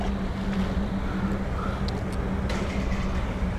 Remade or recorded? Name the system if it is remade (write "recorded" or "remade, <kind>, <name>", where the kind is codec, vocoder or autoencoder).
recorded